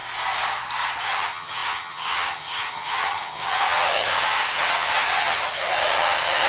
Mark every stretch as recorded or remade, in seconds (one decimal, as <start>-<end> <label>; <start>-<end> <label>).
0.0-1.0 recorded; 1.0-6.5 remade